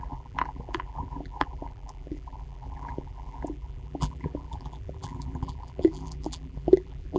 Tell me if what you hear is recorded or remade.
remade